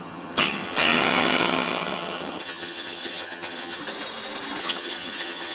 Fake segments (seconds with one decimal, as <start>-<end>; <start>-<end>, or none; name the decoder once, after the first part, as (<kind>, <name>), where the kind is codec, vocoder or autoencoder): 0.0-3.8 (vocoder, HiFi-GAN); 4.6-5.5